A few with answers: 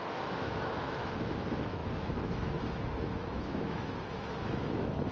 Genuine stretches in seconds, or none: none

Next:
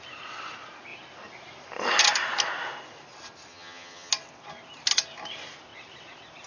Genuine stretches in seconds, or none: 0.0-3.5; 4.1-6.5

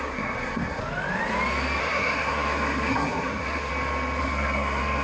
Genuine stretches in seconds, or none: 0.8-1.8; 3.7-4.2

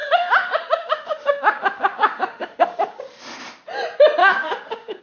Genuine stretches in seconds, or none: 3.0-4.2

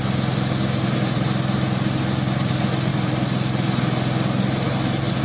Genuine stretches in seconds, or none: 0.0-5.2

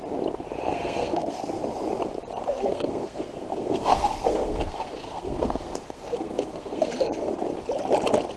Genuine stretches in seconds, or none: 0.0-0.7; 1.6-2.4; 7.4-8.4

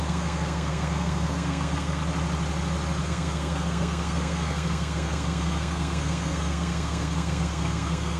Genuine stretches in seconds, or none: 2.0-3.0

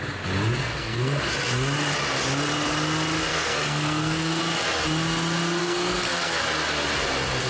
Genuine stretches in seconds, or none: 0.0-0.6; 1.3-3.3; 4.4-5.6; 6.4-7.5